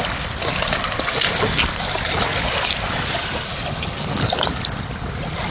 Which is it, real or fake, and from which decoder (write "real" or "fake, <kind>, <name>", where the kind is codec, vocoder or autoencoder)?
real